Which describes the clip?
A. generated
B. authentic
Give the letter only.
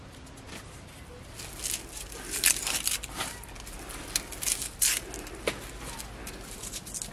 B